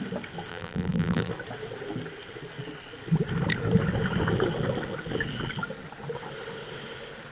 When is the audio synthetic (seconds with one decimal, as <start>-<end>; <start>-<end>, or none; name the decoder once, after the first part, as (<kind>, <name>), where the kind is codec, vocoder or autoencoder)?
0.5-1.3 (vocoder, BigVGAN v2)